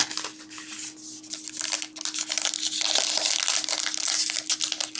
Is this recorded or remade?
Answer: recorded